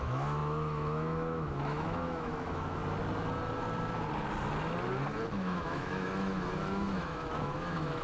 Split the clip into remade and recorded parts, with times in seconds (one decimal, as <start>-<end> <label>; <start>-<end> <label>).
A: 0.0-2.8 remade; 2.8-5.3 recorded; 5.3-8.0 remade